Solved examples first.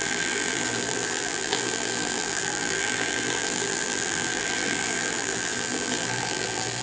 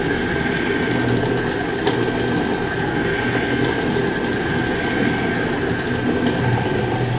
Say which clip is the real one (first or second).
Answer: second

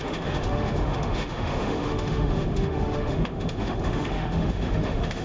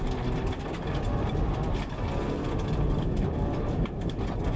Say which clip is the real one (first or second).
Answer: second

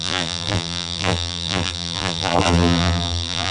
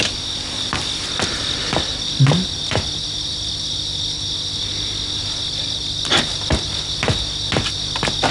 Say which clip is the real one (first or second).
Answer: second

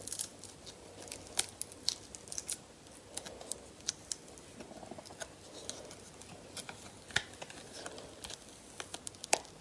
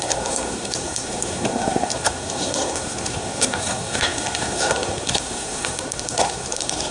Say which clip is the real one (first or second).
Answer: first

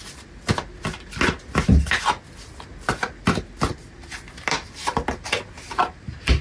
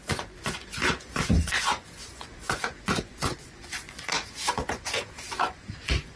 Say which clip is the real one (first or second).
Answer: first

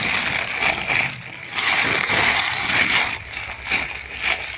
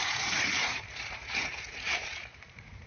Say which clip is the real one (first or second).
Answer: first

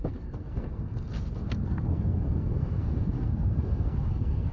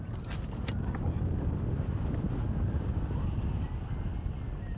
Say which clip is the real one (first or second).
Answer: second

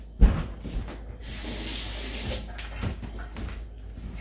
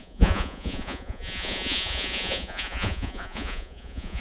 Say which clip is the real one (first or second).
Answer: first